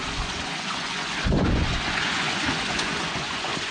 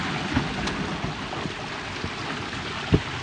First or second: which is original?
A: second